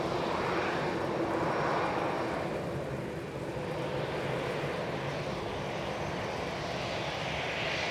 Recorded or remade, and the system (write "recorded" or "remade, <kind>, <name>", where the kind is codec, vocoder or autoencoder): recorded